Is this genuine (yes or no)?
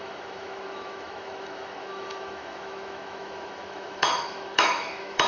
no